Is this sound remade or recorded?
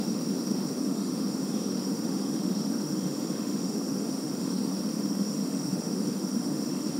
remade